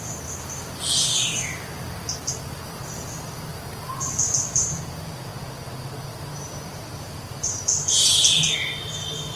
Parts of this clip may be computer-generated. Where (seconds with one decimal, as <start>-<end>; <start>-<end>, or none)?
none